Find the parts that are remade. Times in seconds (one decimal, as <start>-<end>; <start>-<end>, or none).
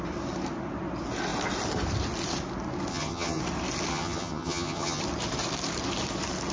2.9-3.4; 3.9-5.0